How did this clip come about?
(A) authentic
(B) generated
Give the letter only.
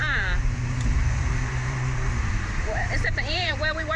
B